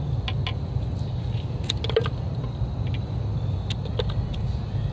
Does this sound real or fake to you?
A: real